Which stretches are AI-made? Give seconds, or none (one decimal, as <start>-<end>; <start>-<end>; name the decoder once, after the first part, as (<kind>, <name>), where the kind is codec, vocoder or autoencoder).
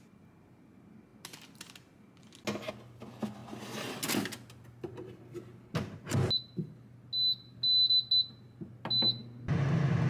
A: none